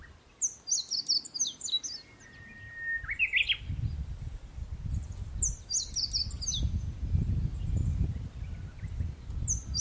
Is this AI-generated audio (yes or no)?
no